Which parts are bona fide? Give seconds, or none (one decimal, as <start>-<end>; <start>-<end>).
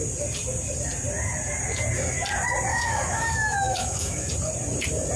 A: 0.0-2.7; 4.3-5.2